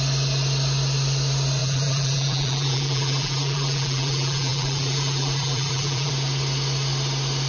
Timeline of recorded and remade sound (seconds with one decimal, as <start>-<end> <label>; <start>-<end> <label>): 0.0-1.6 recorded; 1.6-6.1 remade; 6.1-7.5 recorded